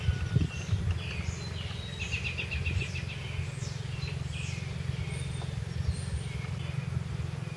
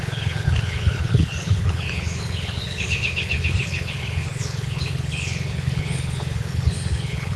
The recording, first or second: first